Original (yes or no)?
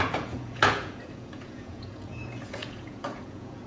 no